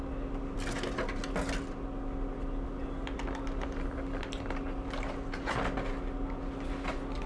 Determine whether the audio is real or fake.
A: real